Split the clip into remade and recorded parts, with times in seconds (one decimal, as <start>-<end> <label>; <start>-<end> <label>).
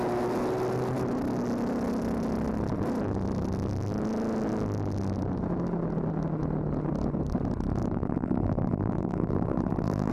0.0-7.8 recorded; 7.8-10.1 remade